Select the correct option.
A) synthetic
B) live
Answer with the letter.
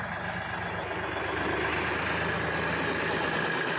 B